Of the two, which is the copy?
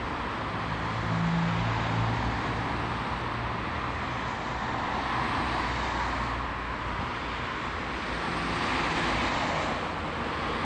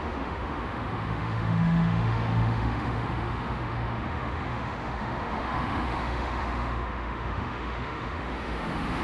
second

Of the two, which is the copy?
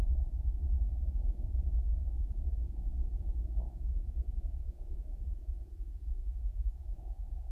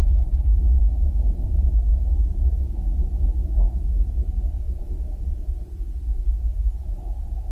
first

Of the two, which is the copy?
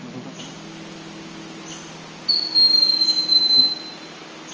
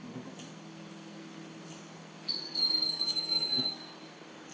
second